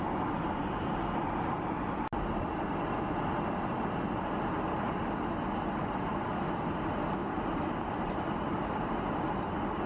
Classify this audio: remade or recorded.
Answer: recorded